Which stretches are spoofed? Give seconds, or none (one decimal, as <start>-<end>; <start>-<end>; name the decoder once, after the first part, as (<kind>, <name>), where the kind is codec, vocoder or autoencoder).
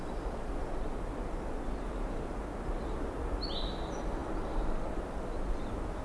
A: none